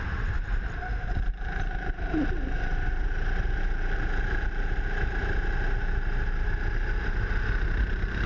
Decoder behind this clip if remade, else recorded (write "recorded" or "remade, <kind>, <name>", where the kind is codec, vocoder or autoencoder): recorded